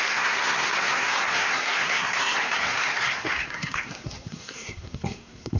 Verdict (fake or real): fake